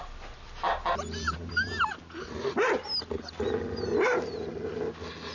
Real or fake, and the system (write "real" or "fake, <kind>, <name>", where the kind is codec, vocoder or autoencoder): real